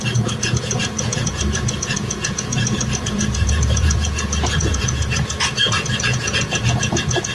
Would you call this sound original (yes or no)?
no